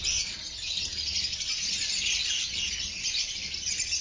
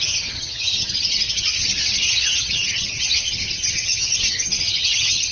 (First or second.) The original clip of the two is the first